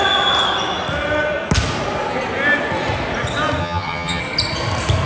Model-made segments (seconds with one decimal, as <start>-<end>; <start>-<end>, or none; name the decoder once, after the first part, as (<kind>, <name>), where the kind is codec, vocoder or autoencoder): 3.6-4.2 (vocoder, HiFi-GAN)